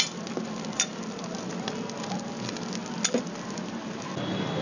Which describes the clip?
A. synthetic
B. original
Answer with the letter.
B